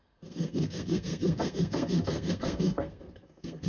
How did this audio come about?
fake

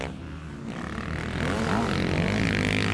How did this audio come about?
real